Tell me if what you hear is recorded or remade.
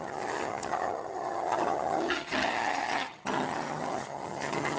remade